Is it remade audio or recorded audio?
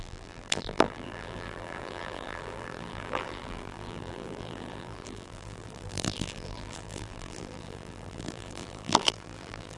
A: remade